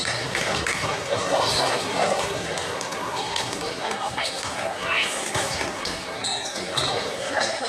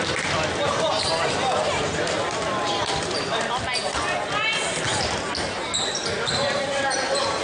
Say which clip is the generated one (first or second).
first